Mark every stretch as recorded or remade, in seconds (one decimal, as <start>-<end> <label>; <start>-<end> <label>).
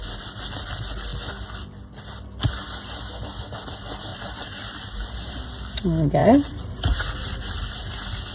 0.0-4.1 recorded; 4.1-5.6 remade; 5.6-6.2 recorded; 6.2-7.8 remade; 7.8-8.3 recorded